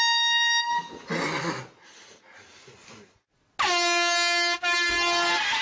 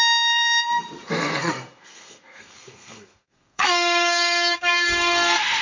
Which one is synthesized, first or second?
second